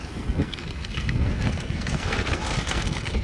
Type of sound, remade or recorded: remade